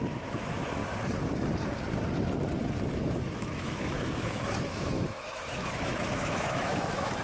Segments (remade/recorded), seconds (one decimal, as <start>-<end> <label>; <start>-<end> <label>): 0.0-0.8 remade; 0.8-2.9 recorded; 2.9-7.2 remade